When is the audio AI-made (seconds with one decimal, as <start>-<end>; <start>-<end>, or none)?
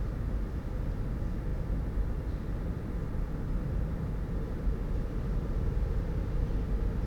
none